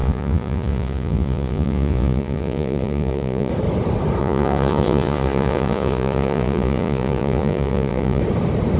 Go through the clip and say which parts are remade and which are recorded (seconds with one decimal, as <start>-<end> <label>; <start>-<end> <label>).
0.0-3.5 remade; 3.5-4.2 recorded; 4.2-8.2 remade; 8.2-8.8 recorded